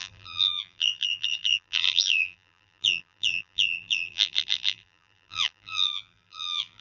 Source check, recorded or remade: remade